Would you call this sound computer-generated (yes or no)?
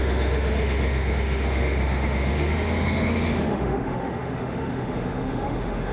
yes